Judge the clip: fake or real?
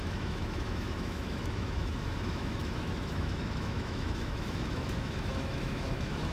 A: fake